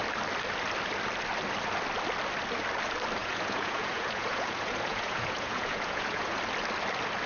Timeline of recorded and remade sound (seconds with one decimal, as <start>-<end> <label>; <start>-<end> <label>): 0.0-3.2 recorded; 3.2-6.4 remade; 6.4-7.3 recorded